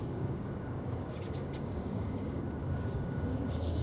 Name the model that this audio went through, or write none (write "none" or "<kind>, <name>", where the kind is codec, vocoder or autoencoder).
codec, DAC